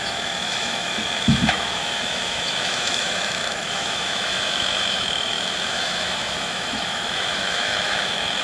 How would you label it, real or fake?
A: fake